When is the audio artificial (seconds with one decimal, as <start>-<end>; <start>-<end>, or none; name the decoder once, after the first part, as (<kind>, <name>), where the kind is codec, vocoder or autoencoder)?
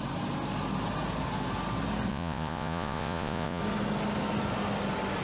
2.1-3.6 (vocoder, Vocos)